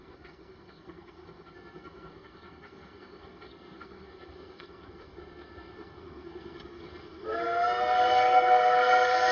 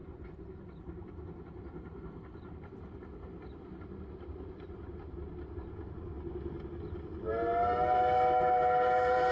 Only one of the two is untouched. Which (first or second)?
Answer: second